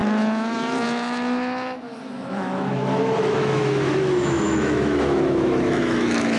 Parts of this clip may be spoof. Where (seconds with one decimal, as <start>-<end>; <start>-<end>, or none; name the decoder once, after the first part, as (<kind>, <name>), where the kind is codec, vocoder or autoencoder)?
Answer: 0.0-6.4 (autoencoder, DAC-VAE)

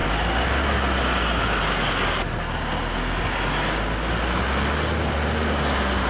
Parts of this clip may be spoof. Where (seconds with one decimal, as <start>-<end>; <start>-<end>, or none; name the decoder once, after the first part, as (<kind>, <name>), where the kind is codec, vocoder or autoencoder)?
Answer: none

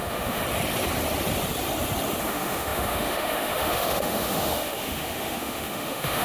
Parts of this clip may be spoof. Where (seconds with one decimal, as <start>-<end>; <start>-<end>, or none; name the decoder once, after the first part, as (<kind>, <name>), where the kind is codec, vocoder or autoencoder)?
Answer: 0.0-0.4 (autoencoder, DAC-VAE); 2.2-6.2

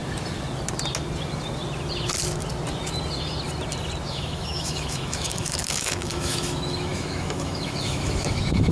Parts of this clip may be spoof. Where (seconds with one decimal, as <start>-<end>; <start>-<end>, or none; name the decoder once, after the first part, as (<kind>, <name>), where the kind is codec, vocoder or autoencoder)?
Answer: 4.1-8.7 (autoencoder, DAC-VAE)